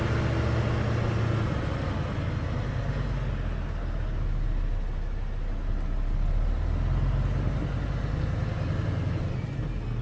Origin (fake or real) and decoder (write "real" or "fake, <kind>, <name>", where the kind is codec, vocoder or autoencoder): real